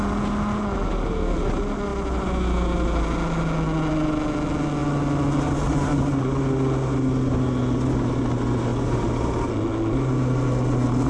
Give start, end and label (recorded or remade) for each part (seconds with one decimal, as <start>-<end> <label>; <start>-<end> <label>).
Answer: 0.0-8.7 recorded; 8.7-9.5 remade; 9.5-11.1 recorded